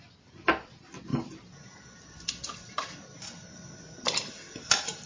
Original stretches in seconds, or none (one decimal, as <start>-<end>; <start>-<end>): 0.0-1.1; 2.7-5.1